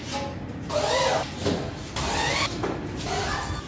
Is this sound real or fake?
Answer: real